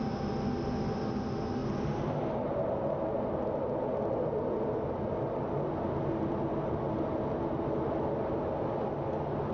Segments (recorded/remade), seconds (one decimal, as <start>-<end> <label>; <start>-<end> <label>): 0.0-9.5 recorded